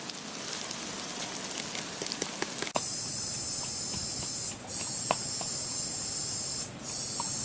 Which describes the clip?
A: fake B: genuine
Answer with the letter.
B